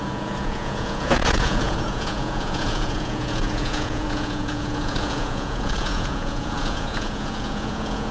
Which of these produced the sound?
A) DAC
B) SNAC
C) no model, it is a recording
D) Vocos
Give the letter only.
D